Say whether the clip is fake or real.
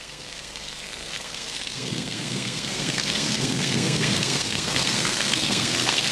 fake